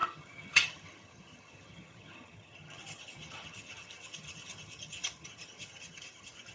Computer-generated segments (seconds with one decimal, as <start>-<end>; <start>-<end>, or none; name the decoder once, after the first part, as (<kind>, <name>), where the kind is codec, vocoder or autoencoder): 0.0-6.5 (vocoder, HiFi-GAN)